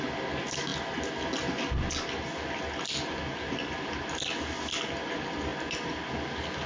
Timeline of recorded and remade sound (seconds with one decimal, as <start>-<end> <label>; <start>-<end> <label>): 0.0-6.7 recorded